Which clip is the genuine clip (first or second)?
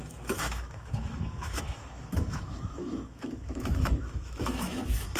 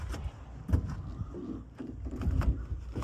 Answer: second